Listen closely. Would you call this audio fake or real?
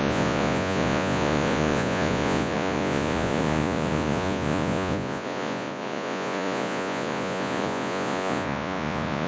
fake